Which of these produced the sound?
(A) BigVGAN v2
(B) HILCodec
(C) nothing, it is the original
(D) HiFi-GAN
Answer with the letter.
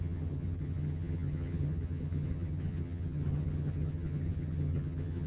D